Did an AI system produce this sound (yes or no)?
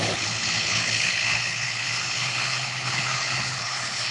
yes